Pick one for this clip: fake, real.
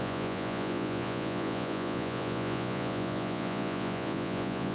fake